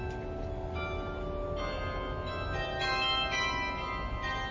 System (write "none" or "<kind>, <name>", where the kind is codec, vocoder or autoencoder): none